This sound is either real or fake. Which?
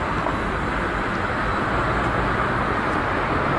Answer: real